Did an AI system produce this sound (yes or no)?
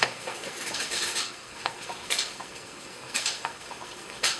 yes